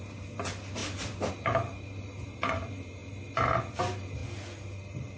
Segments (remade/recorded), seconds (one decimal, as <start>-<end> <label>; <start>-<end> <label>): 0.0-3.0 remade; 3.0-3.6 recorded; 3.6-4.2 remade; 4.2-4.8 recorded; 4.8-5.2 remade